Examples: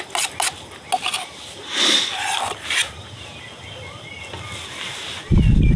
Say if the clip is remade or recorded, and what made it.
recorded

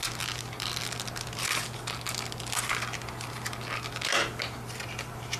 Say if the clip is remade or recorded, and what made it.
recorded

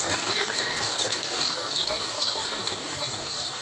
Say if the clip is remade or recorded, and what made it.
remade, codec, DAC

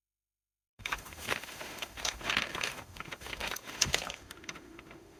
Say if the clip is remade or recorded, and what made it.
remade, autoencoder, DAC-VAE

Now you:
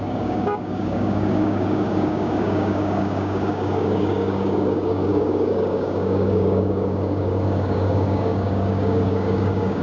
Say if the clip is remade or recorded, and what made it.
remade, codec, DAC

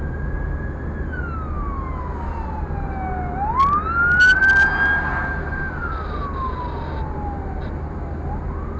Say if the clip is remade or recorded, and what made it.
recorded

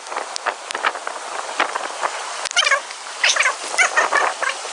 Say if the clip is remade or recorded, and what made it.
recorded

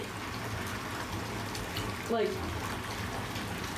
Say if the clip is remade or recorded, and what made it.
recorded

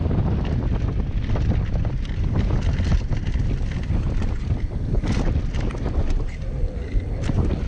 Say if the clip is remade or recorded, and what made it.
recorded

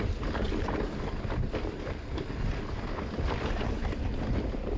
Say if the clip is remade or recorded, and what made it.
recorded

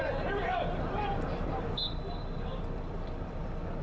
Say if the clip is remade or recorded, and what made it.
remade, vocoder, BigVGAN v2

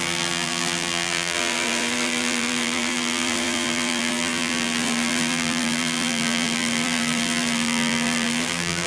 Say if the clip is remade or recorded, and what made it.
remade, vocoder, BigVGAN v2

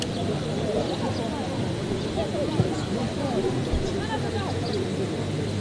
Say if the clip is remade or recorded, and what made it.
recorded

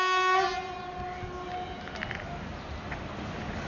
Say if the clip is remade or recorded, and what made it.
recorded